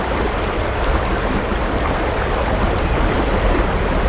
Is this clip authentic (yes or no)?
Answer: yes